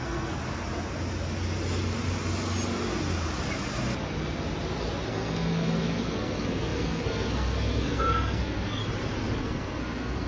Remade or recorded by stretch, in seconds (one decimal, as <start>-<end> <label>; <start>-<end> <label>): 0.0-0.4 remade; 0.4-5.1 recorded; 5.1-8.8 remade; 8.8-9.4 recorded; 9.4-10.3 remade